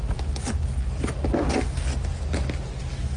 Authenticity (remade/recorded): recorded